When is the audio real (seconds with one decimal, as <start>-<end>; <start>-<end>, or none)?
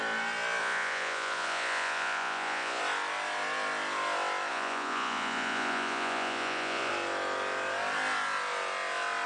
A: 0.0-0.6; 2.8-4.5; 6.9-9.3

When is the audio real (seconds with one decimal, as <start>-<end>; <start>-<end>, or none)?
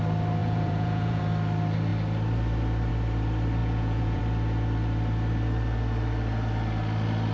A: 0.0-0.4; 1.2-3.6; 4.2-7.3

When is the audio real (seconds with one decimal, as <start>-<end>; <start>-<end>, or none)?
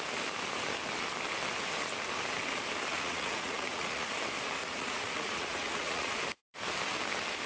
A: 0.0-2.9; 4.1-4.6; 6.2-7.5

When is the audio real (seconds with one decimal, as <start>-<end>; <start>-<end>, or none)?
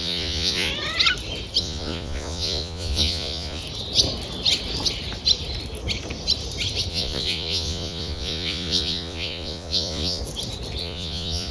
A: 0.7-1.6; 3.6-6.9; 10.2-10.8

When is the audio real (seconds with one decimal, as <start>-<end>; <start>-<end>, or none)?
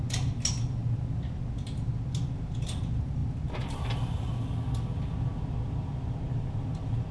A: 0.0-7.1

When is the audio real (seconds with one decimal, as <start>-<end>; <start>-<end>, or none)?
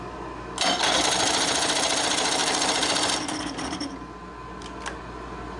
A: 0.0-5.6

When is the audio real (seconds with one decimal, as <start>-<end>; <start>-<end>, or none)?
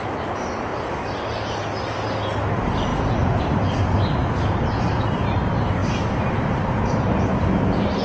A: 0.0-2.9; 3.4-8.0